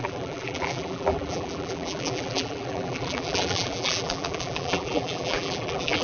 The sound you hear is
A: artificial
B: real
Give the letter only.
A